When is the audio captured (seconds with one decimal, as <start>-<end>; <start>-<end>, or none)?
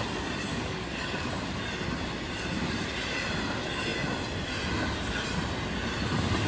0.0-0.5; 1.3-6.5